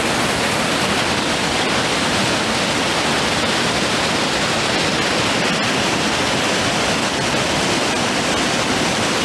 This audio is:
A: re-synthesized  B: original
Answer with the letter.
B